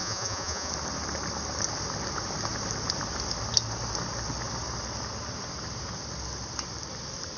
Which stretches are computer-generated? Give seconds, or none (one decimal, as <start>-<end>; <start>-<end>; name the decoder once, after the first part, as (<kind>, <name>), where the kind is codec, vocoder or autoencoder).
0.0-0.7 (vocoder, Vocos)